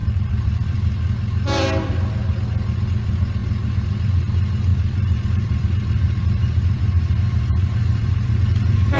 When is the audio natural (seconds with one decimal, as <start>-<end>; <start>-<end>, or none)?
1.0-3.4; 4.2-4.7